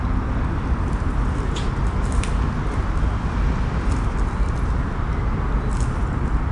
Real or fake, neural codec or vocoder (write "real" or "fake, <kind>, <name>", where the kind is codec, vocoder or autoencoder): real